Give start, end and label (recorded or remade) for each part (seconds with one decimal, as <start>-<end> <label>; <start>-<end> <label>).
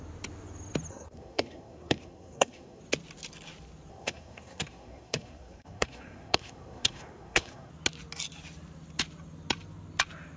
0.0-0.9 recorded; 0.9-2.8 remade; 2.8-3.9 recorded; 3.9-7.7 remade; 7.7-10.4 recorded